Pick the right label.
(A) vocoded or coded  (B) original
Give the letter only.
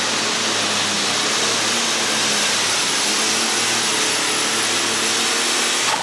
B